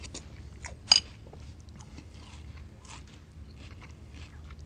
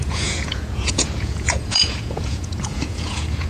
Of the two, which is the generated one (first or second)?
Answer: second